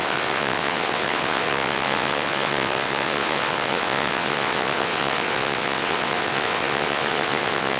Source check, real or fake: fake